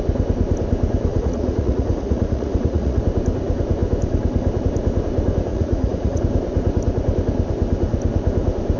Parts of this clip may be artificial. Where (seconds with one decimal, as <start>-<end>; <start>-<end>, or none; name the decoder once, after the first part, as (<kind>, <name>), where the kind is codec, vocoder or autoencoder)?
1.1-3.0 (vocoder, Vocos); 5.5-6.2